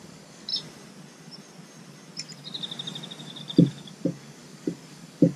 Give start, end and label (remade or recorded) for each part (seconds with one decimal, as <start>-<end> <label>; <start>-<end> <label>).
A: 0.0-0.5 remade; 0.5-3.7 recorded; 3.7-5.4 remade